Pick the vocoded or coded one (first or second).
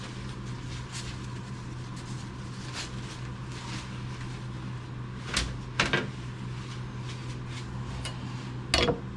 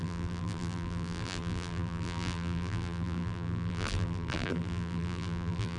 second